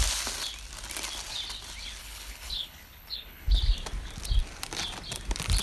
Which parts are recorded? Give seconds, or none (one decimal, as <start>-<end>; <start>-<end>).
0.0-2.0; 3.6-5.6